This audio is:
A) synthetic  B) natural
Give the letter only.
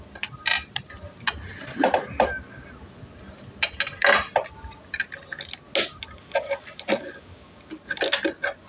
B